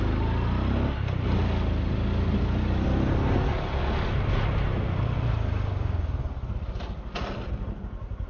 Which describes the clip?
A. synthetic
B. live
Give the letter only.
B